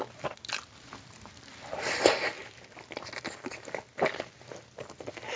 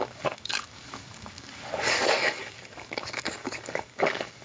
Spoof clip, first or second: second